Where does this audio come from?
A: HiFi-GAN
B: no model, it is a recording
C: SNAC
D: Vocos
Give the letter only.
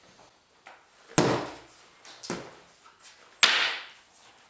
B